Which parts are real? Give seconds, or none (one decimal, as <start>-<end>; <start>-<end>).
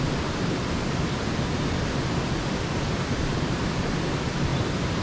none